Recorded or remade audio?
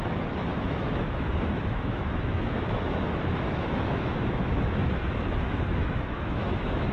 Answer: remade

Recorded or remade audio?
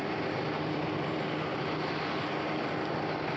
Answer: recorded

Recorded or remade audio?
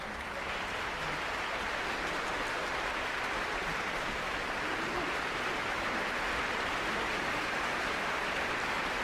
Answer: remade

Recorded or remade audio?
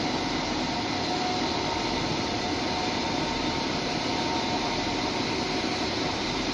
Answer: recorded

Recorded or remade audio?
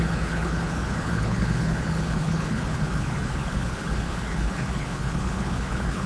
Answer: remade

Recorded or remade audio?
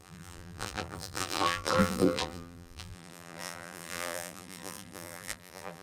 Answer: remade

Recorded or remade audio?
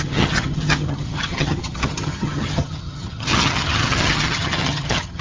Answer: remade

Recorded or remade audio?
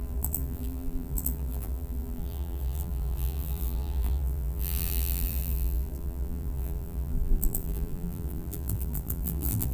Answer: remade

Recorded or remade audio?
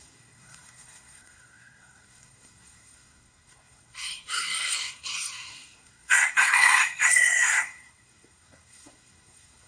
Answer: remade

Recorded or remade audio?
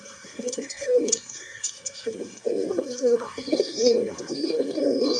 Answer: remade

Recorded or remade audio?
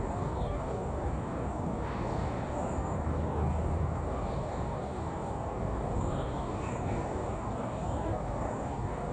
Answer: remade